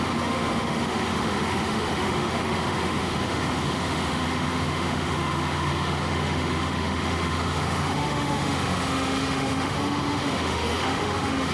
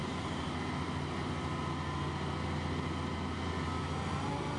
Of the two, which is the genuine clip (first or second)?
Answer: second